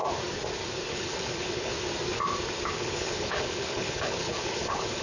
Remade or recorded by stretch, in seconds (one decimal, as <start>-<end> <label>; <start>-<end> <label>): 0.0-0.9 recorded; 0.9-1.7 remade; 1.7-2.7 recorded; 2.7-5.0 remade